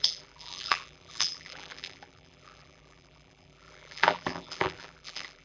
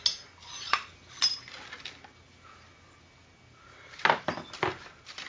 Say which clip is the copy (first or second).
first